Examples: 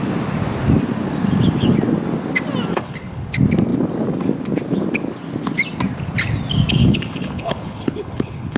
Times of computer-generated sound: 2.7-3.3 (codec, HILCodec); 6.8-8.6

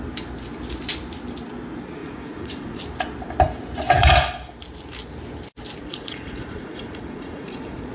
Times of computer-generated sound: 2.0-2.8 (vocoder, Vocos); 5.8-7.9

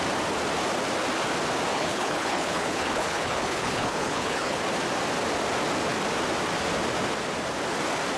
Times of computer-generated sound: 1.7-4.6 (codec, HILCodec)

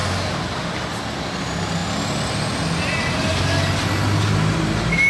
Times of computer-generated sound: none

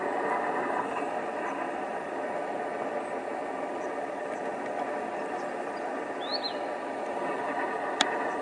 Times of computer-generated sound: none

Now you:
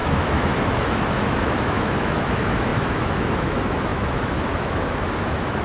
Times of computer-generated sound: 0.0-5.6 (autoencoder, DAC-VAE)

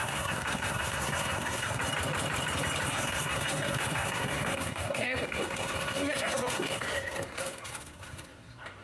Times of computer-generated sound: 0.0-1.8 (codec, SNAC); 2.9-8.8